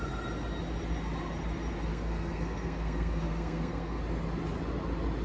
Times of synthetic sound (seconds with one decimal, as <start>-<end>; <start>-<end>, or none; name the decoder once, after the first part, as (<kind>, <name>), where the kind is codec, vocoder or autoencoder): 1.9-4.0 (codec, SNAC)